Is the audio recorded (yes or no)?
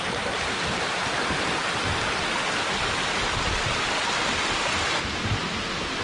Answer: yes